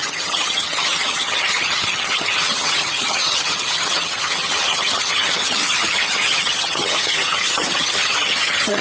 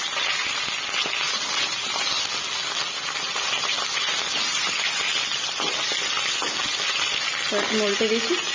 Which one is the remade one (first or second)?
first